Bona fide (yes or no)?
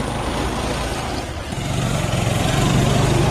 yes